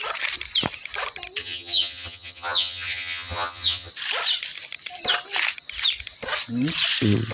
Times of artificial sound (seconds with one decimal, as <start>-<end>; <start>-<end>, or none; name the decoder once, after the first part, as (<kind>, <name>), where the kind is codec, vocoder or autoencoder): 1.4-3.9 (vocoder, HiFi-GAN)